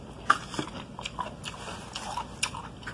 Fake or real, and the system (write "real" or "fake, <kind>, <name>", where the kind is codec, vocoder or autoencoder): real